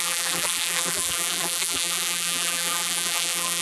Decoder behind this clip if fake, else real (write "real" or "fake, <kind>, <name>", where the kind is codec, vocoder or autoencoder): fake, vocoder, BigVGAN v2